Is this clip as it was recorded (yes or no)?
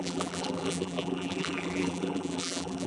no